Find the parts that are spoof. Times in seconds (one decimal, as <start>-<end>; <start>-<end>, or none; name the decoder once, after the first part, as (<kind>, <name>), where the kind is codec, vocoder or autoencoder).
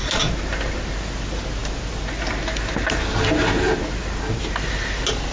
none